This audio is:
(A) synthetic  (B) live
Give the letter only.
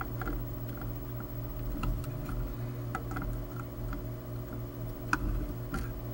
B